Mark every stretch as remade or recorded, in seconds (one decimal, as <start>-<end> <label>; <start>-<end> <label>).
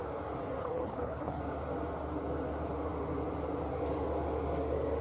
0.0-0.6 recorded; 0.6-1.4 remade; 1.4-5.0 recorded